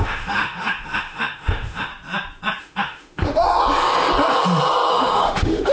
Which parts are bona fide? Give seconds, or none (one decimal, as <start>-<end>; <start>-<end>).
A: 1.9-2.6; 3.4-4.9